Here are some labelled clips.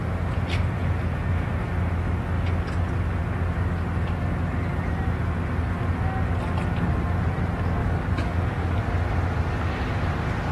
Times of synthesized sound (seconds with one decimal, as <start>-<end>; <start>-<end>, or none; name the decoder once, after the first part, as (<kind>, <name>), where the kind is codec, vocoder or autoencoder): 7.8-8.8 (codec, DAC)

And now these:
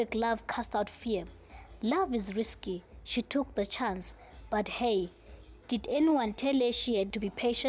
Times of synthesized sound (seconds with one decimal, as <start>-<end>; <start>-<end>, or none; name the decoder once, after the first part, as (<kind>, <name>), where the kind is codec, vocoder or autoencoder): 6.1-7.2 (codec, DAC)

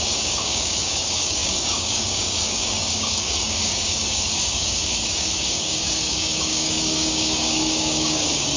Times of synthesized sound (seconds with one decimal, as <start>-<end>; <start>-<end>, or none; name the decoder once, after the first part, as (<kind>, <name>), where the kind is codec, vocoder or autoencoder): 0.0-8.6 (codec, DAC)

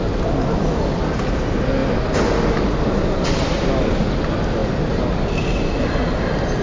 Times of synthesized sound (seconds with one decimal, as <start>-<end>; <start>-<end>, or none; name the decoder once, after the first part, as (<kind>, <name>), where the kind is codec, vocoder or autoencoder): none

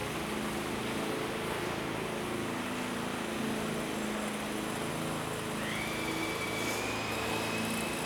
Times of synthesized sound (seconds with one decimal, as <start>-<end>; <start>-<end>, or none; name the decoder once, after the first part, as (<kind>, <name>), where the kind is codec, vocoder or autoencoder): none

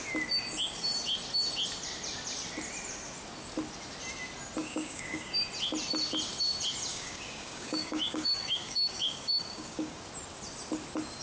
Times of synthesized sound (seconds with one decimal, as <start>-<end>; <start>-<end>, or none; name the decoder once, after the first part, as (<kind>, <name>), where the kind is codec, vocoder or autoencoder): 4.6-5.3 (codec, DAC); 6.9-10.0